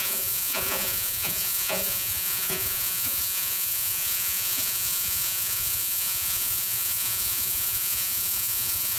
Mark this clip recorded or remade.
remade